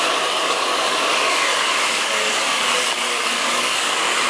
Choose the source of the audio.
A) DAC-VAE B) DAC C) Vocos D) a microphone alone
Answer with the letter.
B